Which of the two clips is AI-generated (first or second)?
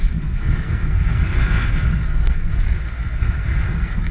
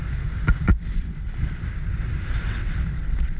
first